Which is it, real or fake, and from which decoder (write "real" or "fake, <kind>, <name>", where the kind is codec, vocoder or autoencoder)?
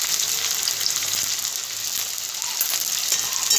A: real